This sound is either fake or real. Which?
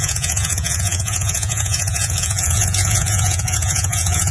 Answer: fake